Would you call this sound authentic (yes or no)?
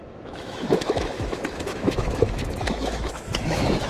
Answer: no